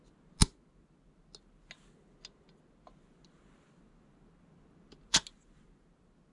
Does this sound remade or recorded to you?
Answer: recorded